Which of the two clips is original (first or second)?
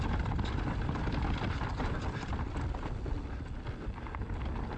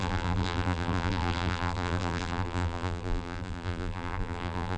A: first